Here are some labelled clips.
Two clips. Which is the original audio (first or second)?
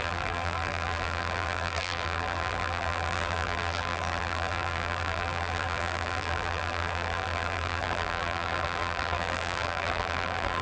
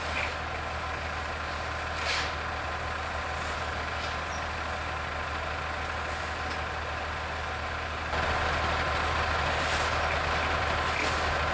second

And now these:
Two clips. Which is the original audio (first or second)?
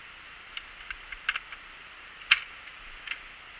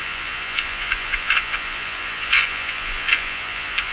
first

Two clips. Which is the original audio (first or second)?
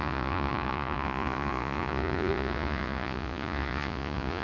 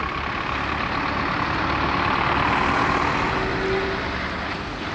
second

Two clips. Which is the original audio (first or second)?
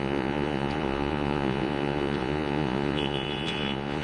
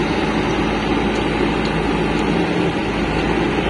second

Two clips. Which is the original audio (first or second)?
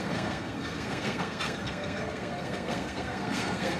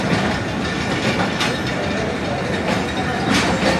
second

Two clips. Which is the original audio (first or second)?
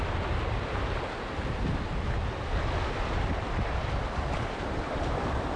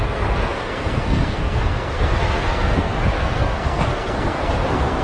first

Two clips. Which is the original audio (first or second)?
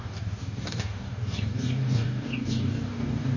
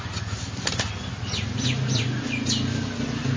second